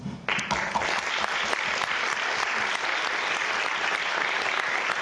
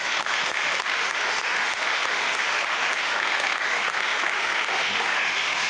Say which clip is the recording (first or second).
first